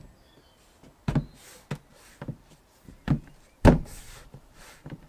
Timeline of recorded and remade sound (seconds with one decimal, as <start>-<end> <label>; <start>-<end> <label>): 0.0-1.9 recorded; 1.9-5.1 remade